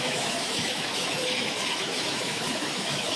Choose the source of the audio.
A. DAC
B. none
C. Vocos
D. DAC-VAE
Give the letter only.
D